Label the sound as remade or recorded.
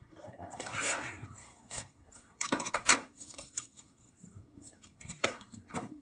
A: remade